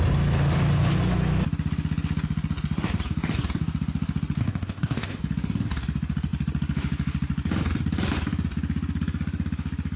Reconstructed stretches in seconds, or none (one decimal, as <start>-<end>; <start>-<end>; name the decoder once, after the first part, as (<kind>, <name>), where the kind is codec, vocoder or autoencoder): 4.4-5.2 (codec, ZipCodec)